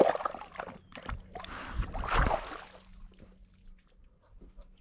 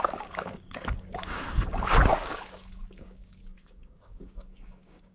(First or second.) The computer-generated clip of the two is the second